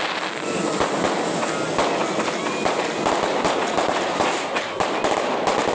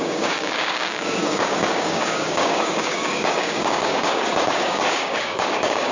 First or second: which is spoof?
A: second